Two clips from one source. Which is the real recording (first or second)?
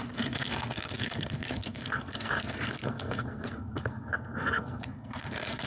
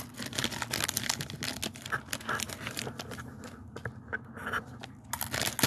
second